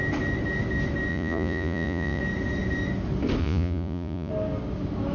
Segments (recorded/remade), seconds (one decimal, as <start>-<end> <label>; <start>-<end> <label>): 0.0-1.1 recorded; 1.1-2.2 remade; 2.2-3.4 recorded; 3.4-4.3 remade; 4.3-5.1 recorded